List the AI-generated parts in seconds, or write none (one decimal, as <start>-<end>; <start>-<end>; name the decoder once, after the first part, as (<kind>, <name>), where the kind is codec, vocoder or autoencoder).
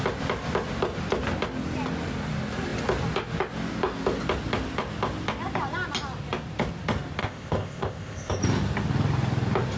7.2-8.4 (codec, ZipCodec)